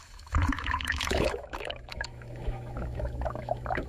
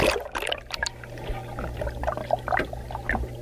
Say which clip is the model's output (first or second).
first